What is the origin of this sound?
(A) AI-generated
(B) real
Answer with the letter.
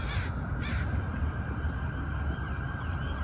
B